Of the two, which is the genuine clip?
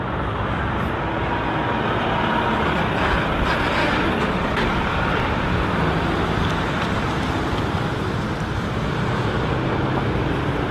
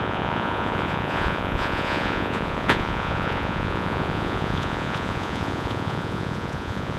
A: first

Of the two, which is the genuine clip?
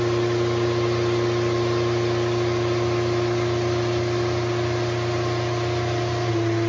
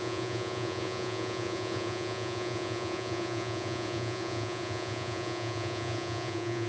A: first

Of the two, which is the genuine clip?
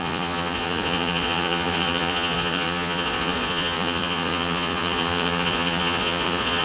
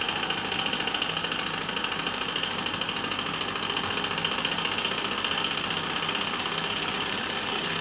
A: second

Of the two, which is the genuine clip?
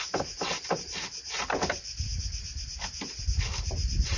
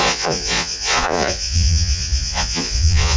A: first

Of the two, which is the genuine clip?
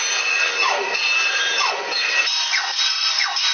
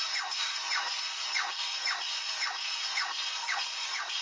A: first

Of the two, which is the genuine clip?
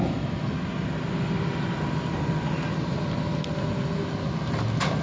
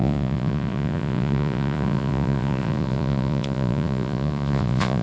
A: first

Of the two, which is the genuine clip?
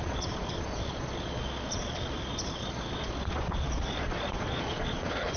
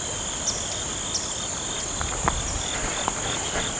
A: second